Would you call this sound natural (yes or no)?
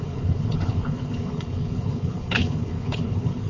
no